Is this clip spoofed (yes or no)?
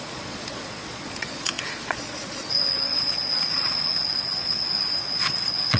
yes